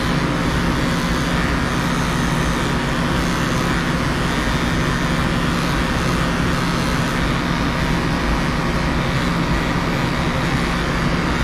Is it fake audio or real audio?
real